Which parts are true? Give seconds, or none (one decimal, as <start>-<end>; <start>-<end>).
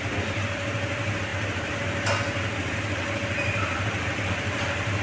0.0-5.0